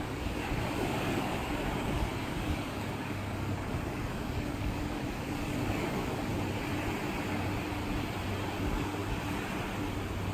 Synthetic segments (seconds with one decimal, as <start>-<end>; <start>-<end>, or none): 0.0-6.3; 8.6-9.0